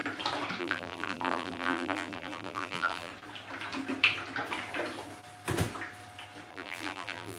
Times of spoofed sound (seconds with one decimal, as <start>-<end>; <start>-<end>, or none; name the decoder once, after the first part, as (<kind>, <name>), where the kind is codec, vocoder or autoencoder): 0.6-3.1 (vocoder, BigVGAN v2); 6.5-7.4